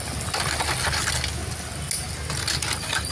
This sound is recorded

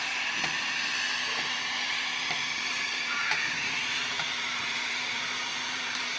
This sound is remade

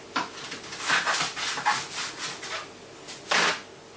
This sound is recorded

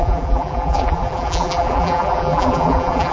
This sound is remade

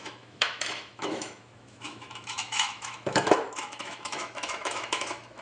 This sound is remade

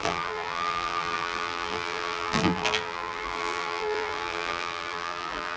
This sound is remade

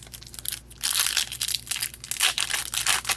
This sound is recorded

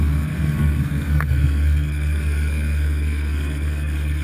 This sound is remade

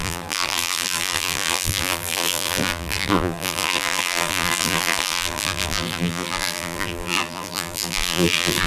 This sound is remade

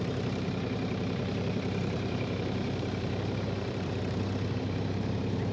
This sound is remade